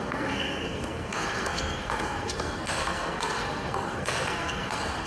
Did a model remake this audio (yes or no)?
yes